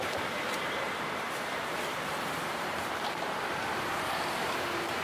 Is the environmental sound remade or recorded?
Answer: remade